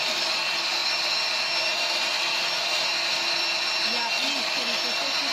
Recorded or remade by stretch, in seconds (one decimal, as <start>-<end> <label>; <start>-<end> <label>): 0.0-5.3 recorded

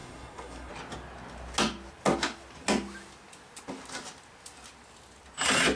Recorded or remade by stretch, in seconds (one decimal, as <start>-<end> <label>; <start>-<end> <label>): 0.0-0.7 remade; 0.7-5.8 recorded